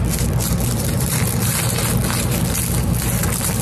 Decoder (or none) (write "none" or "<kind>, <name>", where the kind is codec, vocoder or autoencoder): none